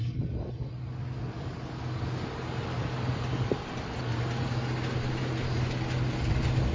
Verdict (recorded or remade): recorded